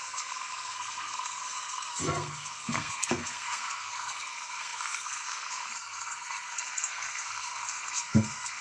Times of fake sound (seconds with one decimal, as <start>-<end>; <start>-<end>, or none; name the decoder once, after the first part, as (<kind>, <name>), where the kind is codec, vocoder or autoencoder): 0.0-8.6 (codec, SNAC)